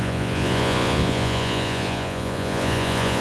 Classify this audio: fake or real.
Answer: fake